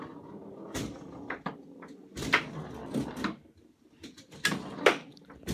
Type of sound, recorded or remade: recorded